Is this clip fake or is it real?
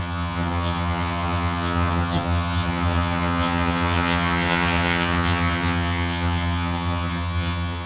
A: fake